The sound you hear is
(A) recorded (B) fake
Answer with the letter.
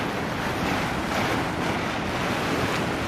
A